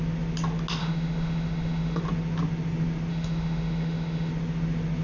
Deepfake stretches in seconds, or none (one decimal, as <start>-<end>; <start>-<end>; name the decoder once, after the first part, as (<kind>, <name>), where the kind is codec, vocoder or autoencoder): 0.8-2.0 (autoencoder, DAC-VAE); 3.1-4.3